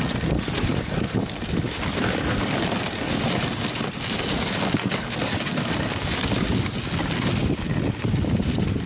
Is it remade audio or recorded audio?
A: recorded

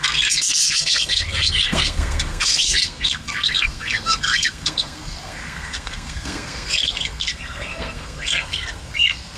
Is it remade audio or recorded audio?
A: remade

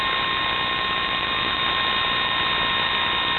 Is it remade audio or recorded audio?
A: recorded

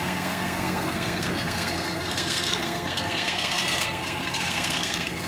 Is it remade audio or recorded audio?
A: remade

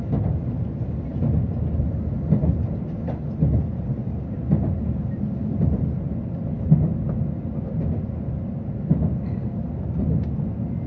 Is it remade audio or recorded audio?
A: recorded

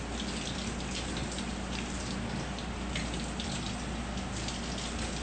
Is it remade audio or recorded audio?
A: recorded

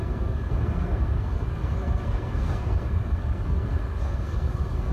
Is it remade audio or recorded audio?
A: remade